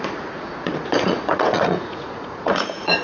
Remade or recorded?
remade